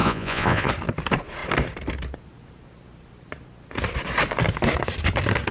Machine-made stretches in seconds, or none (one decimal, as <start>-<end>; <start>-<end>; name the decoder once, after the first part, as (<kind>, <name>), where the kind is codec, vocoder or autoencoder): 0.0-0.7 (vocoder, Vocos)